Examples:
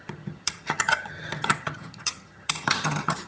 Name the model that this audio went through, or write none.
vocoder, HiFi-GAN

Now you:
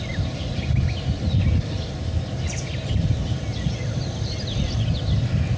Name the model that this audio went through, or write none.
none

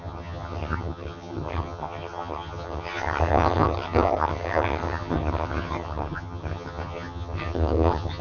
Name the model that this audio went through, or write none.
vocoder, HiFi-GAN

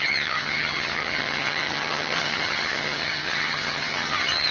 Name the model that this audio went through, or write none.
vocoder, HiFi-GAN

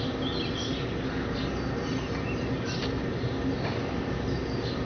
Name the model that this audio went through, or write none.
none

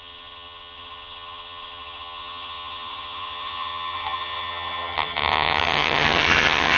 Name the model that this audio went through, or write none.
vocoder, HiFi-GAN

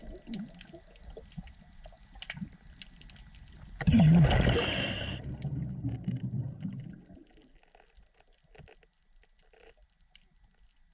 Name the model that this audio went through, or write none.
none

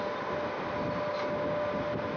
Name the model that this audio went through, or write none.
none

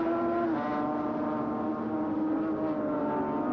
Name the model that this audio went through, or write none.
none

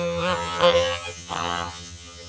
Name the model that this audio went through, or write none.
vocoder, HiFi-GAN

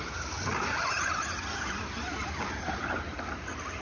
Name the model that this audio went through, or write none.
none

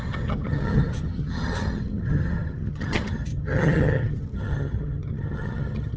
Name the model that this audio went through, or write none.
vocoder, HiFi-GAN